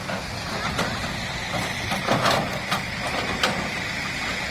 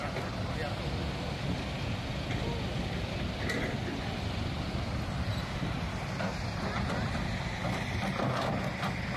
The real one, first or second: second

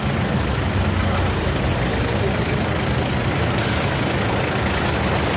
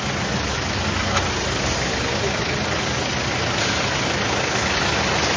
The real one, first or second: second